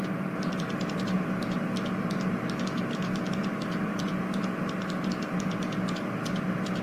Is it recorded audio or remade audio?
recorded